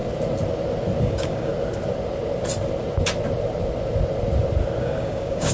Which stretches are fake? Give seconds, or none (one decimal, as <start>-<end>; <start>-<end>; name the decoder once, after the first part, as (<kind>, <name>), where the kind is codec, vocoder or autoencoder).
1.0-1.5 (codec, DAC); 4.8-5.5